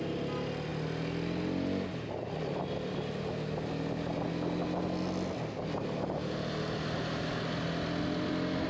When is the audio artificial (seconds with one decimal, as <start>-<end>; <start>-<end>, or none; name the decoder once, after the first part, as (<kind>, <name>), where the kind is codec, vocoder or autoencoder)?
none